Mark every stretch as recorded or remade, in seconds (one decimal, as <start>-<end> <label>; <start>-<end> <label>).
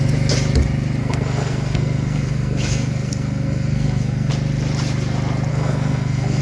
0.0-1.0 recorded; 1.0-4.3 remade; 4.3-5.5 recorded; 5.5-6.4 remade